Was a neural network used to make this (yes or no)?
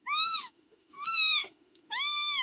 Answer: yes